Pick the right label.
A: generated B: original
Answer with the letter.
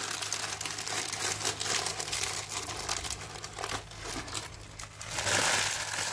B